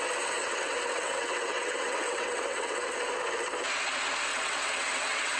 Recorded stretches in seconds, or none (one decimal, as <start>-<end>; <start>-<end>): 0.0-0.4; 2.9-4.3